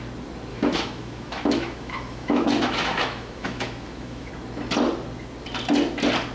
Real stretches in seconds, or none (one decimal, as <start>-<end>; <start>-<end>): 0.0-0.5; 4.3-6.3